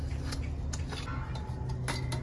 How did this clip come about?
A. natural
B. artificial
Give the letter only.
A